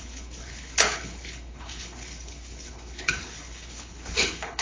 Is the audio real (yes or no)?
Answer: no